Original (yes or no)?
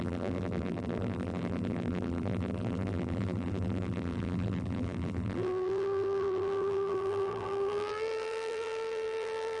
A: no